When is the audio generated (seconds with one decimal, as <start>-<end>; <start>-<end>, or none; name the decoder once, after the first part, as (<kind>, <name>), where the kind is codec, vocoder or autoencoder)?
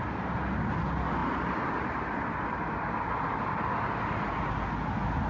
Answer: none